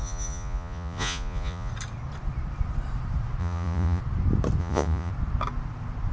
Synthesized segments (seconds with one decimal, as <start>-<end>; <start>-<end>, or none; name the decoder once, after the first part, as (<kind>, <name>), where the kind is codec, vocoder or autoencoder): 0.0-1.7 (vocoder, Vocos); 3.4-4.0; 4.6-5.1